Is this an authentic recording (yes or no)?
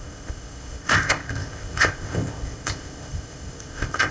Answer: no